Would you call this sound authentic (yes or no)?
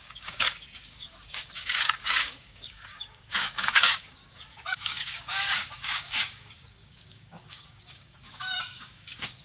no